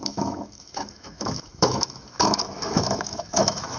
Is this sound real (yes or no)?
no